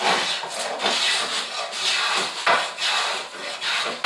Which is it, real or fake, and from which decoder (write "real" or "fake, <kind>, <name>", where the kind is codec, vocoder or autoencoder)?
real